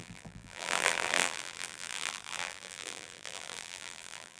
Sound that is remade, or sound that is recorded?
remade